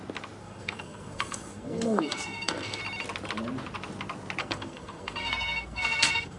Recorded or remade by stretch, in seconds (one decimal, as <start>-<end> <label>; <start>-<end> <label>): 0.0-0.4 recorded; 0.4-2.8 remade; 2.8-4.4 recorded; 4.4-6.4 remade